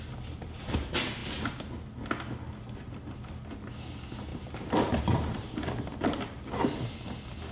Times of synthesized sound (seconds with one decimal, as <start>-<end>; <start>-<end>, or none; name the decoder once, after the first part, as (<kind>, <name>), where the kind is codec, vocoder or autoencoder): 4.3-6.0 (vocoder, BigVGAN v2)